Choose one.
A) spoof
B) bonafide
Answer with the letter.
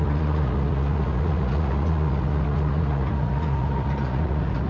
A